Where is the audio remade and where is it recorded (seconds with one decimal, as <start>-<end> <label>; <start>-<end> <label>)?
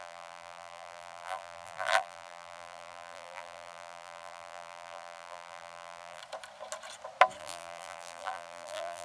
0.0-6.2 remade; 6.2-7.4 recorded; 7.4-9.0 remade